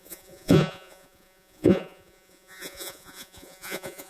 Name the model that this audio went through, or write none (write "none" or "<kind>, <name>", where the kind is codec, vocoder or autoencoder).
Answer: vocoder, Vocos